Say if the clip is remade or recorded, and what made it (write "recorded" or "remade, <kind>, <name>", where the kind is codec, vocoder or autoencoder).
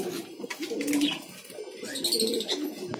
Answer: recorded